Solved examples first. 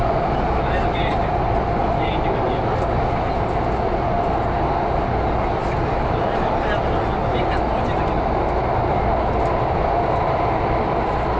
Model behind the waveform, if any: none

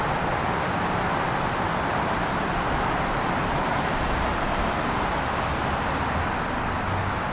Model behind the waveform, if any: none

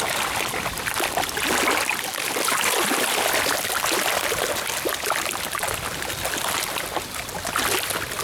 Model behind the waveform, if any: none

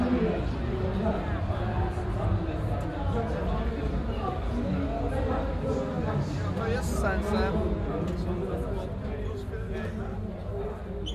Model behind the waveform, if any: none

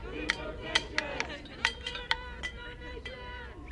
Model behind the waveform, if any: none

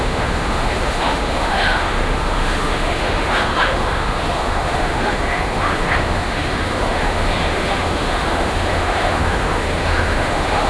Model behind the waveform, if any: autoencoder, DAC-VAE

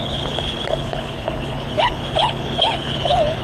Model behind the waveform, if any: codec, HILCodec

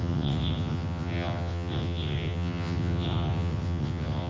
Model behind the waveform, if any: vocoder, WaveNeXt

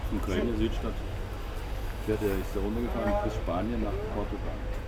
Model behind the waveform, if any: none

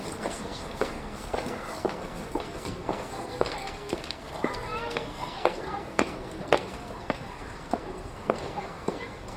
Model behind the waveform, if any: codec, SNAC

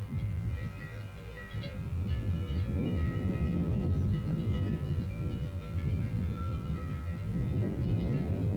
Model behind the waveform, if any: vocoder, BigVGAN v2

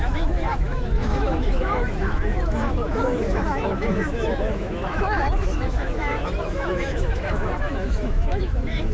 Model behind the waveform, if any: autoencoder, DAC-VAE